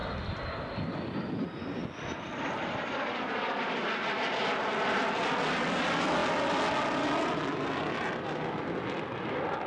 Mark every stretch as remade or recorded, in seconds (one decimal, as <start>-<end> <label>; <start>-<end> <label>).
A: 0.0-0.9 recorded; 0.9-1.8 remade; 1.8-4.4 recorded; 4.4-6.2 remade; 6.2-7.8 recorded; 7.8-9.7 remade